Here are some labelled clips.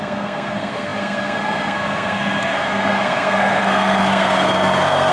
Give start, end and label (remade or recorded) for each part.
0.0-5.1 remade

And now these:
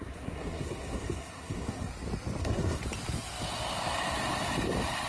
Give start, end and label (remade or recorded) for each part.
0.0-1.9 remade; 1.9-2.4 recorded; 2.4-2.8 remade; 2.8-5.1 recorded

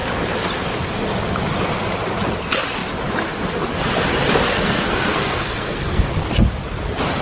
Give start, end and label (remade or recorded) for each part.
0.0-4.5 recorded; 4.5-6.1 remade; 6.1-7.2 recorded

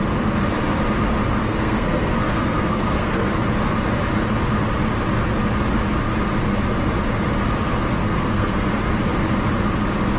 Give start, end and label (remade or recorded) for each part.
0.0-1.4 recorded; 1.4-3.2 remade; 3.2-8.0 recorded; 8.0-8.7 remade; 8.7-10.2 recorded

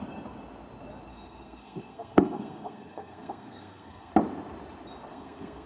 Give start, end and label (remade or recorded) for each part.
0.0-1.1 recorded; 1.1-4.1 remade; 4.1-5.1 recorded; 5.1-5.7 remade

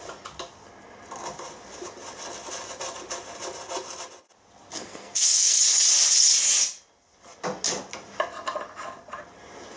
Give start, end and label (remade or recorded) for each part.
0.0-4.7 recorded; 4.7-5.6 remade; 5.6-9.8 recorded